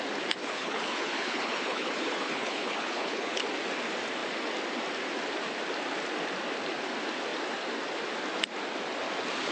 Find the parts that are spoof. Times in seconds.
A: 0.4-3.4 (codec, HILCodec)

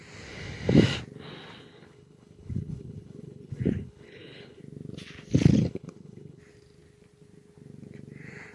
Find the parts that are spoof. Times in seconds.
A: 1.6-4.6 (codec, HILCodec); 5.6-6.4

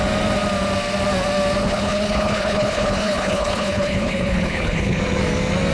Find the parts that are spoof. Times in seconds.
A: 1.6-5.0 (codec, HILCodec)

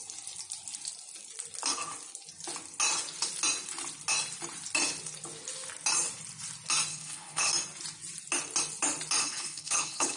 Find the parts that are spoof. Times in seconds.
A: 6.9-7.5 (codec, HILCodec); 9.2-10.2

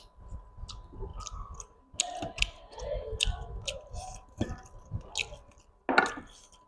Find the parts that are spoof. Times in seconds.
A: none

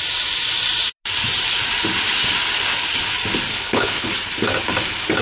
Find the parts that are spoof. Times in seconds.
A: 3.5-4.1 (codec, HILCodec)

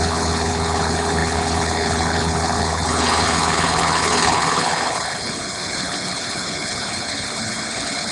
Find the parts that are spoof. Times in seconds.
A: 0.0-8.1 (codec, HILCodec)